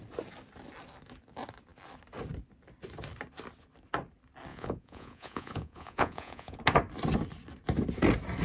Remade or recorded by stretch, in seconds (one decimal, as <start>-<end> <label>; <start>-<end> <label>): 0.0-4.5 recorded; 4.5-6.6 remade; 6.6-8.4 recorded